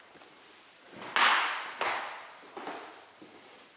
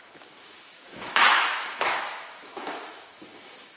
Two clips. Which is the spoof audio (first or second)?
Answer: second